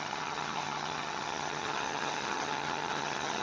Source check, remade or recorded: remade